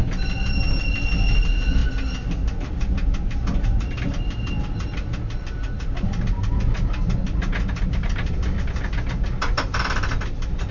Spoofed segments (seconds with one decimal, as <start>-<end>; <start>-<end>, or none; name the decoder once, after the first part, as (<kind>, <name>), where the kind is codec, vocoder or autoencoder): none